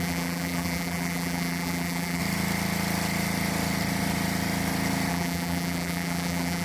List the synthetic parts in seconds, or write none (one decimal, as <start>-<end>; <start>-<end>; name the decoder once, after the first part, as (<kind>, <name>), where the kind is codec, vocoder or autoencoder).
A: 0.0-2.2 (vocoder, BigVGAN v2); 5.1-6.6